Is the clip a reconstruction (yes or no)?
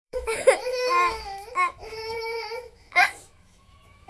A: yes